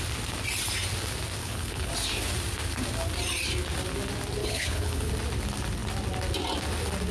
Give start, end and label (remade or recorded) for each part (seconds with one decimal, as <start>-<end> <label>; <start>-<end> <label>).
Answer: 0.0-1.4 recorded; 1.4-1.9 remade; 1.9-4.4 recorded; 4.4-5.1 remade; 5.1-7.1 recorded

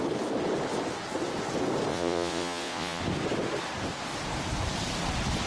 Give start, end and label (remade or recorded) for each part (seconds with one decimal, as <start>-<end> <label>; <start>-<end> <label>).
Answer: 0.0-1.9 recorded; 1.9-3.0 remade; 3.0-5.5 recorded